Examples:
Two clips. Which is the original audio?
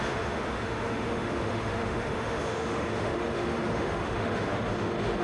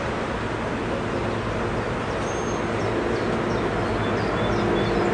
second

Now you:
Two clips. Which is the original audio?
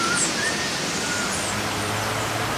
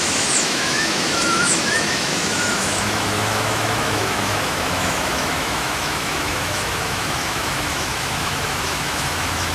first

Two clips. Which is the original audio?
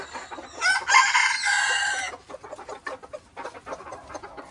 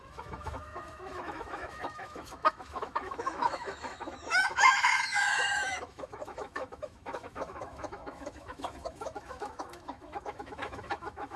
first